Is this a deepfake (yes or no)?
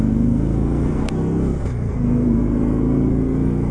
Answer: yes